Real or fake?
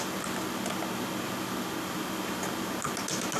real